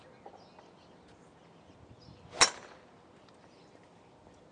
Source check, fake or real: real